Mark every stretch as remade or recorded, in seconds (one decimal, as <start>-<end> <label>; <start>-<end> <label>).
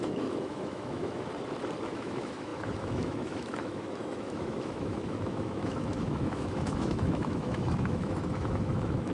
0.0-1.3 remade; 1.3-1.8 recorded; 1.8-9.1 remade